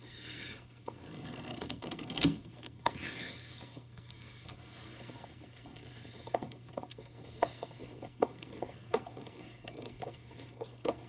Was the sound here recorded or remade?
remade